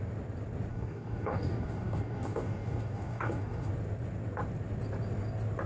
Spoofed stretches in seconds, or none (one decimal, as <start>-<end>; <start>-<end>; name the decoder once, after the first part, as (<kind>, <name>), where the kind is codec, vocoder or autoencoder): 0.7-3.7 (codec, DAC)